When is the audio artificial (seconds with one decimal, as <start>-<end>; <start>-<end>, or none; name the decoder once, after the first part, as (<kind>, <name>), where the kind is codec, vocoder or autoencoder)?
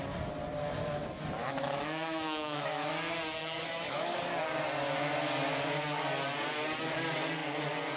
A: 1.4-2.9 (autoencoder, DAC-VAE); 3.4-4.2